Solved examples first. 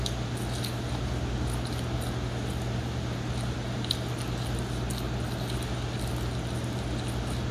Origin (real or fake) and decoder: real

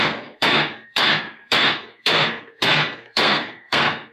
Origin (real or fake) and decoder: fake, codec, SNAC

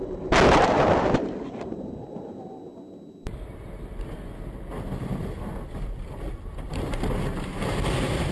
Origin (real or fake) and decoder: real